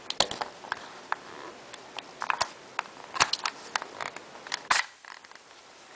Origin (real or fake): real